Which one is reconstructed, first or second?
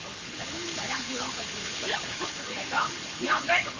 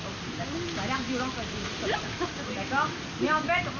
first